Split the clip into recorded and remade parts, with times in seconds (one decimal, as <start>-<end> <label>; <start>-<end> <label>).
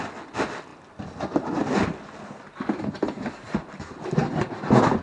0.0-5.0 recorded